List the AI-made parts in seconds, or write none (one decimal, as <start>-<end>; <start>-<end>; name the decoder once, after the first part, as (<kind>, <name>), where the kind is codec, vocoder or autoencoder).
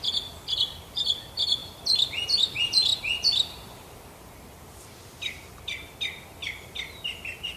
none